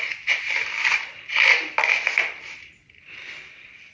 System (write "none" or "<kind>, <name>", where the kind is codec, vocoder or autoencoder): vocoder, BigVGAN v2